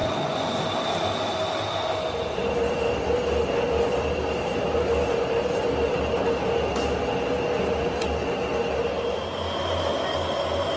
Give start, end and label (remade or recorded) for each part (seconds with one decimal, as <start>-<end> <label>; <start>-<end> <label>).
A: 0.0-0.6 remade; 0.6-10.8 recorded